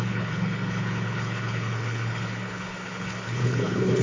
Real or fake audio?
fake